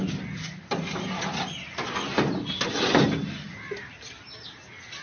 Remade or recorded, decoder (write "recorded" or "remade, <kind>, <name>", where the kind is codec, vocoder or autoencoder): recorded